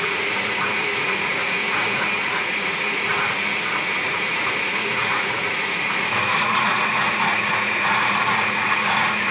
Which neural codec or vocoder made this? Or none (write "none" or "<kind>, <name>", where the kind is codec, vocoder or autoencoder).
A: vocoder, Vocos